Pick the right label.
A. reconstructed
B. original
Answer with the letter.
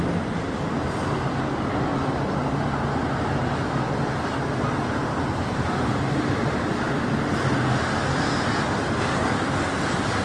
B